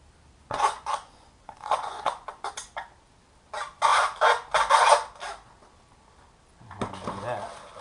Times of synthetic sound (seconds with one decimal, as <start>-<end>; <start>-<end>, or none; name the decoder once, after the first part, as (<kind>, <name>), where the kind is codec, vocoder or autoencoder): 0.4-2.5 (vocoder, Vocos)